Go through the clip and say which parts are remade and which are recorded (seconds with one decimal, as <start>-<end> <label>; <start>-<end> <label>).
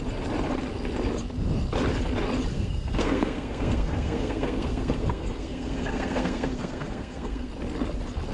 0.0-2.5 recorded; 2.5-7.5 remade; 7.5-8.3 recorded